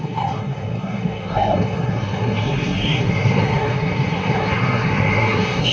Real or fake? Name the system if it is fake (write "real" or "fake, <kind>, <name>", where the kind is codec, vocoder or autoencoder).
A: fake, codec, SNAC